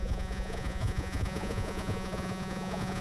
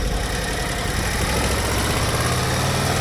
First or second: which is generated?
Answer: first